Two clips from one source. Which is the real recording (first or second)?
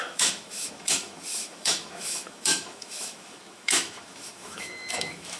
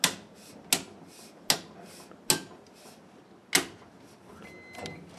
second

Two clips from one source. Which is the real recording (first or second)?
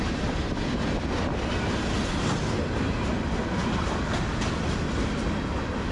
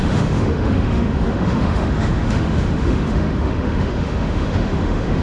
first